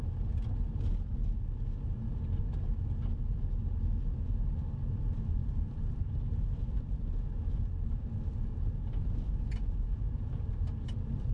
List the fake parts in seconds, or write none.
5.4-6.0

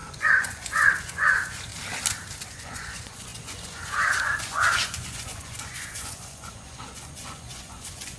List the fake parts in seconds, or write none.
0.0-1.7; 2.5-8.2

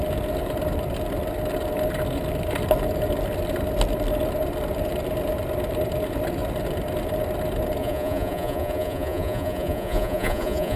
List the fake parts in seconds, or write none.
7.8-10.8